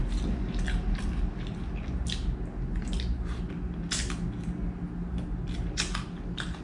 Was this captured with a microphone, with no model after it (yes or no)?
yes